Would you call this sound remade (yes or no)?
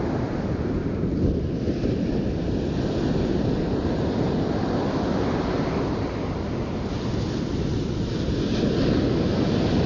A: no